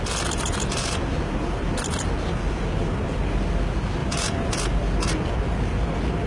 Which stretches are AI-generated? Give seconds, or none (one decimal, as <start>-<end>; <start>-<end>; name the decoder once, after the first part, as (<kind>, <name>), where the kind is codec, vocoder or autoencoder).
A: 4.0-4.6 (vocoder, BigVGAN v2)